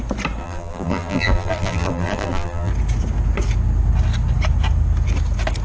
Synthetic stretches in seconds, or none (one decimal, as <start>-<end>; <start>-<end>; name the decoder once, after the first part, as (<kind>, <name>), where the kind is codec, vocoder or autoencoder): 0.4-2.7 (vocoder, BigVGAN v2)